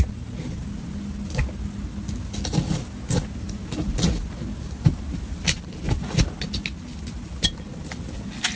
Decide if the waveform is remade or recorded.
recorded